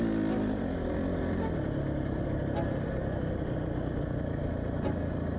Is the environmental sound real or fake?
real